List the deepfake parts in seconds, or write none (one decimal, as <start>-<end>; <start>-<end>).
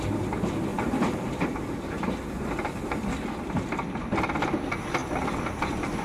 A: 0.7-3.7